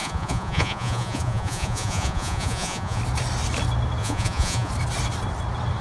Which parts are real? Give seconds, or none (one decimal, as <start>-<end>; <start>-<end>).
3.0-4.0; 4.7-5.8